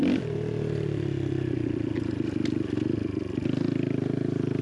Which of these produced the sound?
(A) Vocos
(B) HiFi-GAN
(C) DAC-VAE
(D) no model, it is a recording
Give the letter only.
D